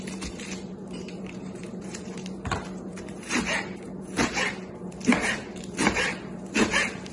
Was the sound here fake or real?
fake